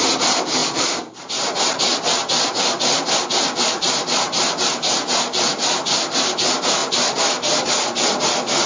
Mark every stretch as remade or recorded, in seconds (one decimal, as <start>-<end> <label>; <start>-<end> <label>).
0.0-0.6 recorded; 0.6-1.8 remade; 1.8-6.8 recorded; 6.8-8.7 remade